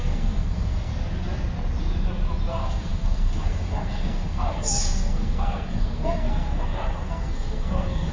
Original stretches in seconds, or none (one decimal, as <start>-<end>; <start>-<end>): 0.9-2.5